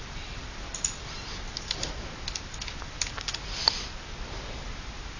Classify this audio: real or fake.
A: real